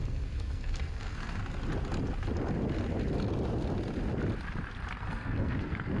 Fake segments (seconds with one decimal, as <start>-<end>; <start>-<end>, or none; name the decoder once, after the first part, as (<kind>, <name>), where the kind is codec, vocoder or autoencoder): 0.0-1.4 (codec, SNAC); 5.0-6.0